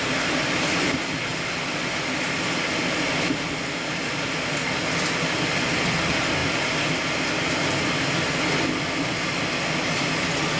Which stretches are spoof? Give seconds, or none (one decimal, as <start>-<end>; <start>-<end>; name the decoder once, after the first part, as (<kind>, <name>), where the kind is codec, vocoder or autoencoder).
none